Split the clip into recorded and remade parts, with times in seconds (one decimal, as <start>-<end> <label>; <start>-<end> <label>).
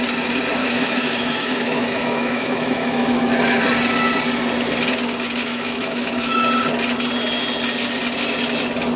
0.0-0.6 recorded; 0.6-3.6 remade; 3.6-5.5 recorded; 5.5-6.5 remade; 6.5-9.0 recorded